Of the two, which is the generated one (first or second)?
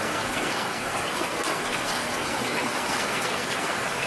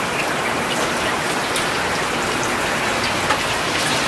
first